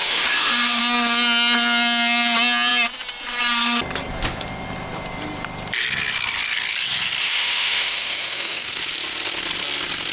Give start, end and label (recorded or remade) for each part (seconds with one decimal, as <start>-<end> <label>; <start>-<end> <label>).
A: 0.0-0.8 remade; 0.8-7.2 recorded; 7.2-8.8 remade; 8.8-10.1 recorded